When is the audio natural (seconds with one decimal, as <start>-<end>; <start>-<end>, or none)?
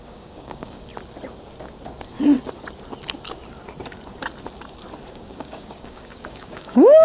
0.9-5.1